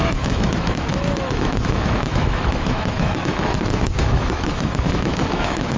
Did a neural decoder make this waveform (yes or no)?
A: yes